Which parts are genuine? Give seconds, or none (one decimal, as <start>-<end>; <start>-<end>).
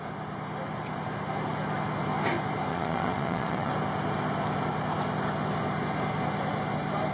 0.0-2.7; 3.7-7.1